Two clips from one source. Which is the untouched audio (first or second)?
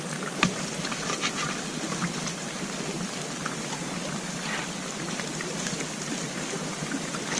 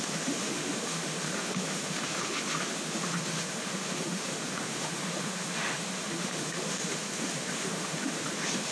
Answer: first